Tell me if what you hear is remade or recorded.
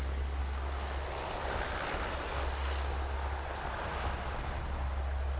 recorded